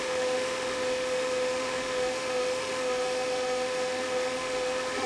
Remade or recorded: remade